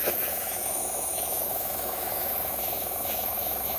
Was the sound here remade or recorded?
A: remade